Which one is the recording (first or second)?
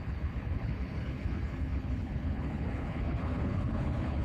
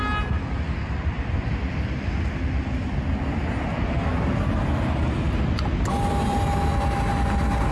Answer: second